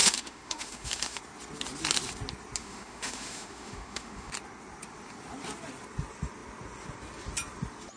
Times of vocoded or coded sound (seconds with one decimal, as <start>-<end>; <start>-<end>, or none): 0.0-1.2; 2.6-4.3